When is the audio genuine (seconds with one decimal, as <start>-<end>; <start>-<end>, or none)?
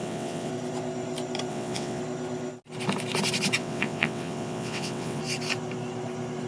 0.5-1.5; 2.0-3.6; 5.2-6.5